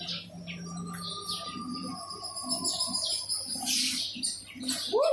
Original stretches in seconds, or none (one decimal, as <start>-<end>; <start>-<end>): 1.9-5.1